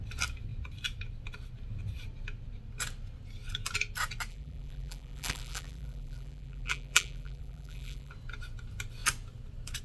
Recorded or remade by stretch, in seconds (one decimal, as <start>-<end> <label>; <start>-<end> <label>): 0.0-4.3 recorded; 4.3-8.1 remade; 8.1-9.8 recorded